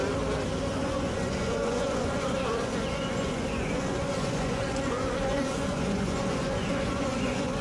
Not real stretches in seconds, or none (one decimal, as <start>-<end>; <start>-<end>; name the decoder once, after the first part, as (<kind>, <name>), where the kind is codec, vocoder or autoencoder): 0.8-7.6 (vocoder, Vocos)